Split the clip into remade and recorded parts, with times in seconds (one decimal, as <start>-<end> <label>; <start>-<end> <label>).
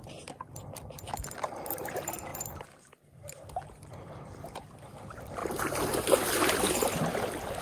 0.0-5.4 remade; 5.4-7.1 recorded; 7.1-7.6 remade